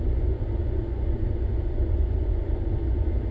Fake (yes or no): yes